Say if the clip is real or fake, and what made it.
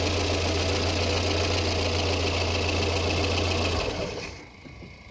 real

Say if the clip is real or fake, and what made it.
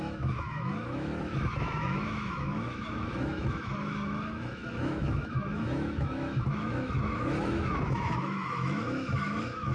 fake, autoencoder, DAC-VAE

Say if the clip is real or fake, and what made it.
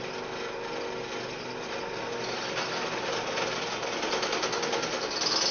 real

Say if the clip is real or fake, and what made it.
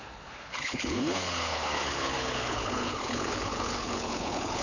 fake, codec, HILCodec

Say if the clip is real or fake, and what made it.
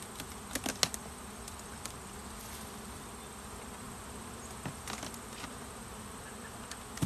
real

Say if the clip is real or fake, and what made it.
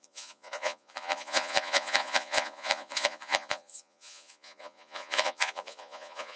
fake, vocoder, Vocos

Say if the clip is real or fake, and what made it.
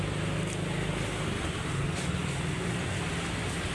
real